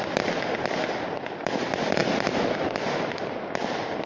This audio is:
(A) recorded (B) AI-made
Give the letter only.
A